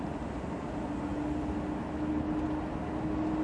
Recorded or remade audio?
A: recorded